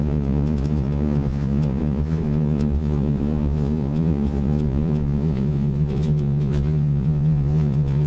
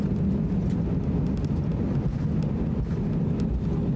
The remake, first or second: first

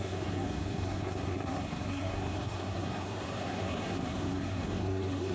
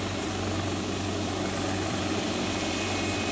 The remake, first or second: first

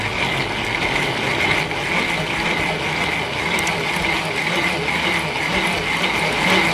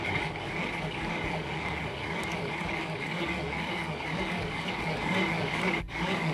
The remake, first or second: second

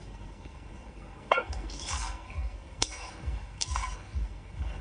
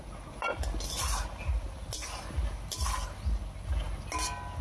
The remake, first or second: first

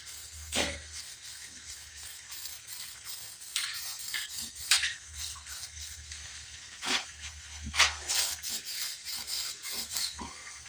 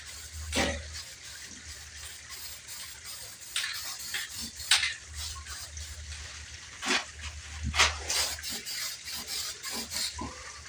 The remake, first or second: first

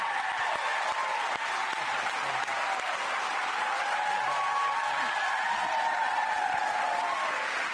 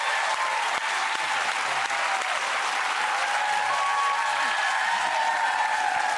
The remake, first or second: first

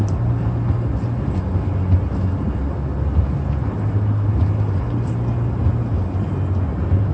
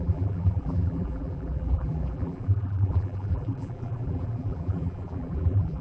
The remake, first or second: second